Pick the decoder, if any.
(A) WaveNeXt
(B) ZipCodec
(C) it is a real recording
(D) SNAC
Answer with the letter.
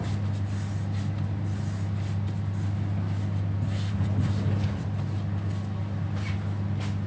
C